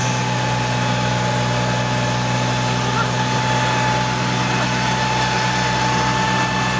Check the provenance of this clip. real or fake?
real